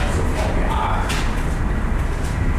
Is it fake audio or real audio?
real